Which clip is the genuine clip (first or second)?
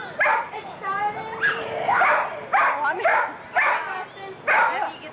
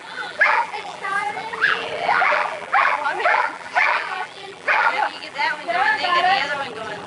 first